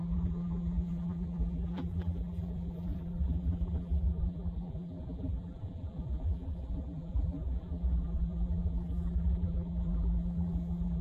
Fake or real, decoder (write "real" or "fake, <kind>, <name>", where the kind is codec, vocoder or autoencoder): fake, vocoder, BigVGAN v2